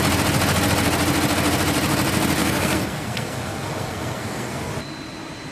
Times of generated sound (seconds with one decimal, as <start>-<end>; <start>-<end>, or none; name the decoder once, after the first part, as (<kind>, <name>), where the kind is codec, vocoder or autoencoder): 2.4-4.7 (codec, SNAC)